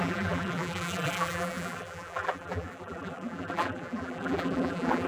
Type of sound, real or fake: fake